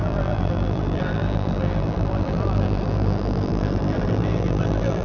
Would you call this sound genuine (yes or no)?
no